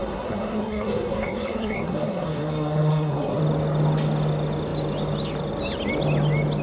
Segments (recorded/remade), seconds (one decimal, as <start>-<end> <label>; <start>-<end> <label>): 0.0-3.4 remade; 3.4-6.6 recorded